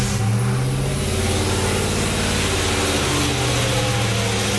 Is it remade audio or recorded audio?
recorded